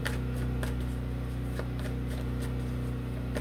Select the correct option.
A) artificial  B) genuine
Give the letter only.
B